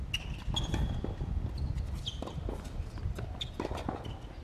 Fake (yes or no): no